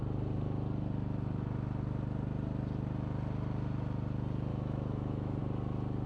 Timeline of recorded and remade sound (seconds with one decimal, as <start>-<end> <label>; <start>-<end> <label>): 0.0-4.5 recorded; 4.5-5.4 remade; 5.4-6.1 recorded